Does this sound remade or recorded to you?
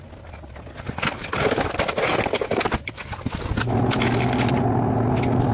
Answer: recorded